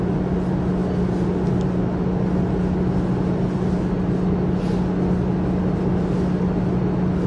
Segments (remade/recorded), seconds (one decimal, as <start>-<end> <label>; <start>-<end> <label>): 0.0-7.3 recorded